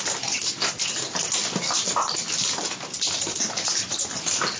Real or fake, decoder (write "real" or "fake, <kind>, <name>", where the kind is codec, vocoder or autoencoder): real